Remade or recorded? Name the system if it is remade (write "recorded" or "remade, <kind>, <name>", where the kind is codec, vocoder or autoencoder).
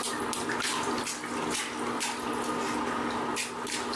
recorded